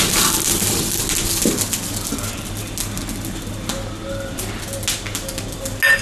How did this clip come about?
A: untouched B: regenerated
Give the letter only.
A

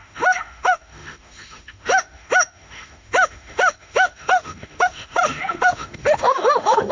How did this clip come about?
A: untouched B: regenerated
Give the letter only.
B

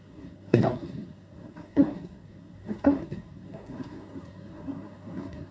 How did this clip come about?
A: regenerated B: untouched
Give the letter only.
A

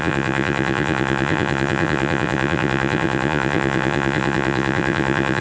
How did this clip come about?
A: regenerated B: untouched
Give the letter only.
A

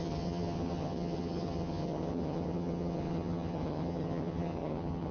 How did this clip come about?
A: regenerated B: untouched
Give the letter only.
A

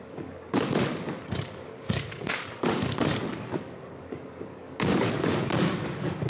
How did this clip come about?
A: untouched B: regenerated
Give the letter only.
B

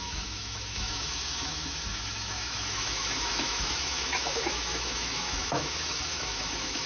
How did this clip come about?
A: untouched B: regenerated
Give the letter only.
B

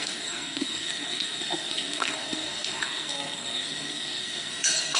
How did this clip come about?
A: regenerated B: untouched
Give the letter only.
A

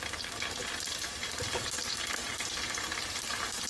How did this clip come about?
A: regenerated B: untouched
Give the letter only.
B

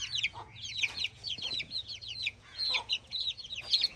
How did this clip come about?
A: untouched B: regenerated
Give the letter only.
B